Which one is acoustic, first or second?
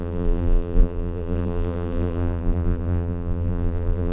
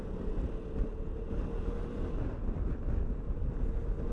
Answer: second